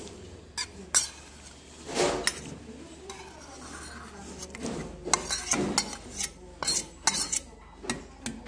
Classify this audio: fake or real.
real